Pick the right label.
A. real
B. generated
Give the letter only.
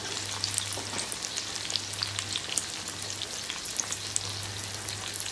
A